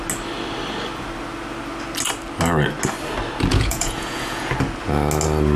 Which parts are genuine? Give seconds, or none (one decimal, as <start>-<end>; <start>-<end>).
0.0-3.5; 4.5-5.6